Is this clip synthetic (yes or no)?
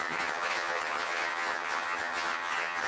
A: yes